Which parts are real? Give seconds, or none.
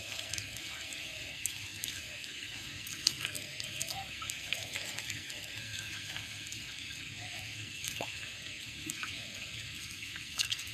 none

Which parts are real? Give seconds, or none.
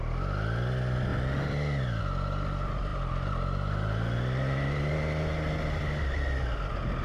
0.0-7.0